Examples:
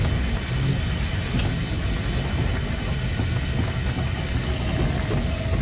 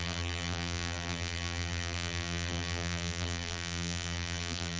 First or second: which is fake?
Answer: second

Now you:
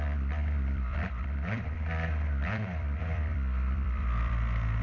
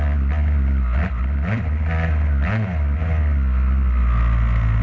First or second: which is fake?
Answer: first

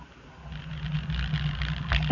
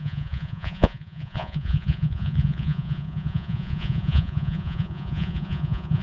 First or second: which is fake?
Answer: second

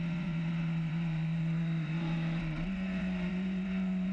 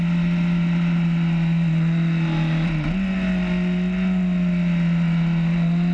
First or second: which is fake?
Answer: first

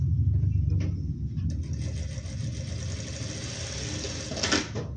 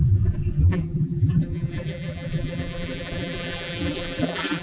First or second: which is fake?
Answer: second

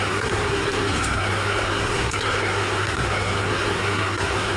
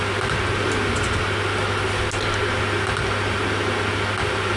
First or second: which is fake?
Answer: first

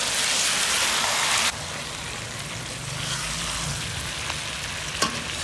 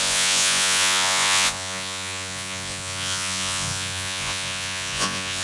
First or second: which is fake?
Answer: second